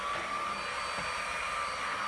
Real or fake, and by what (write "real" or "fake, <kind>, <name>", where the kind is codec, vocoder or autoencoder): real